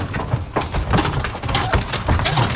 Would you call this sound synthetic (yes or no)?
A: no